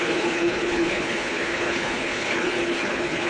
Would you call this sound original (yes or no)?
no